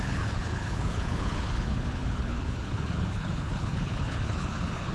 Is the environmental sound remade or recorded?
remade